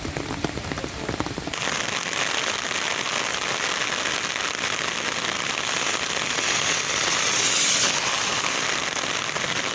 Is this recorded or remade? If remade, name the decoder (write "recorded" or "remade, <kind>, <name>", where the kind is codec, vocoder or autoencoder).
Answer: recorded